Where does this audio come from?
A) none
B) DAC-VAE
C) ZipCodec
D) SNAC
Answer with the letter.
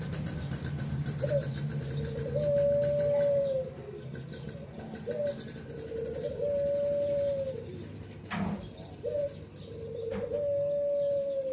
A